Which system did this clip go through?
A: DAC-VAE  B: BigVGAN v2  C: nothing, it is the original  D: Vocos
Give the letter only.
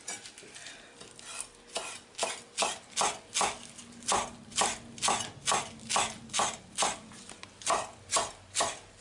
C